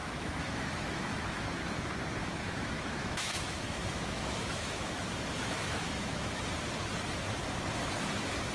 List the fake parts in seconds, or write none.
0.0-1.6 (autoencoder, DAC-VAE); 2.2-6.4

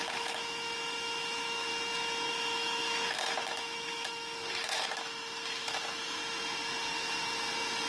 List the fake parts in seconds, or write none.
0.0-1.7 (autoencoder, DAC-VAE); 2.3-6.2

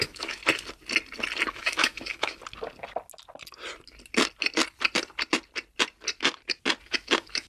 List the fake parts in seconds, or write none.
0.0-0.4 (autoencoder, DAC-VAE); 1.5-2.4; 6.9-7.5

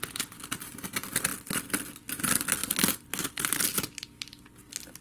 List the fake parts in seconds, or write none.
none